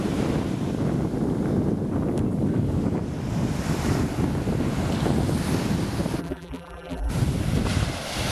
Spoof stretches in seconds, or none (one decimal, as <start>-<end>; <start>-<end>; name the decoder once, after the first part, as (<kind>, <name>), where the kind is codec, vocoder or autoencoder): 6.2-7.1 (vocoder, BigVGAN v2)